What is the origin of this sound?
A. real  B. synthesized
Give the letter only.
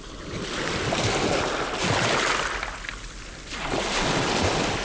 A